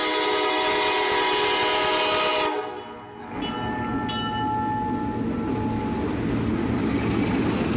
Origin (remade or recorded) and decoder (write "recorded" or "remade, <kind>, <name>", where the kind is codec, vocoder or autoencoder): recorded